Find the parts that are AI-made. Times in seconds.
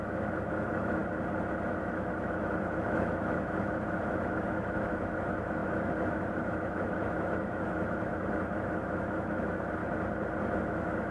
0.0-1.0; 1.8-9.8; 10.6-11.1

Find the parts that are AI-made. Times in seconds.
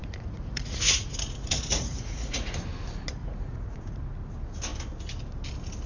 0.0-2.5; 3.2-4.0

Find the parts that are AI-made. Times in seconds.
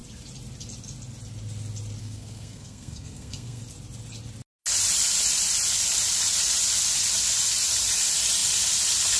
2.0-3.6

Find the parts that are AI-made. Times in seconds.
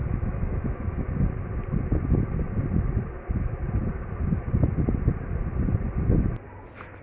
0.0-1.2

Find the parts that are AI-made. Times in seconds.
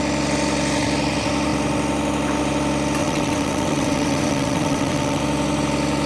3.0-5.2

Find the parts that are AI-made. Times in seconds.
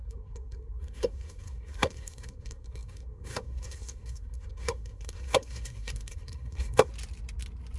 0.0-6.9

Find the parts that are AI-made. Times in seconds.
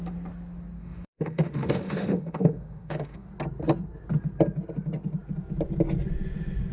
0.8-3.3